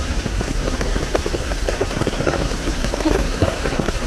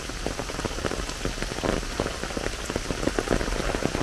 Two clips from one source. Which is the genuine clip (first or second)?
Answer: second